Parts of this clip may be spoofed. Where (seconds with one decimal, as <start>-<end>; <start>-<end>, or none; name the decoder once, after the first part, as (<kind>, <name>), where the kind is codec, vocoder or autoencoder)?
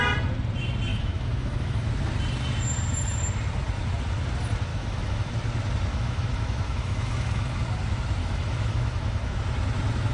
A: 0.9-1.9 (autoencoder, DAC-VAE); 4.7-5.3; 5.9-7.6; 8.2-9.4